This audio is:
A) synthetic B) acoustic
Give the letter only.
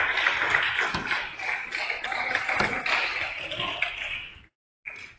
B